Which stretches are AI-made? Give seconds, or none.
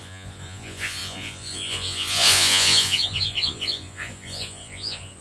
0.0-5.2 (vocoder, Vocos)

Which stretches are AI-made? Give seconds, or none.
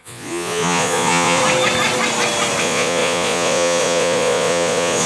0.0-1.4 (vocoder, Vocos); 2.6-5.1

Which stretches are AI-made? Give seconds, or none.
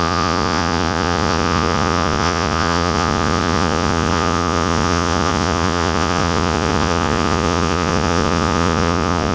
0.0-9.3 (vocoder, Vocos)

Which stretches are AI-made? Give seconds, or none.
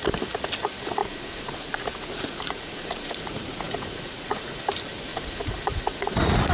1.0-4.6 (vocoder, Vocos); 5.1-6.5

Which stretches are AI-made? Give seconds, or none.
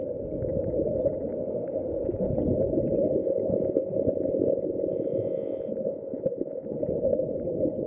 3.2-6.6 (vocoder, Vocos)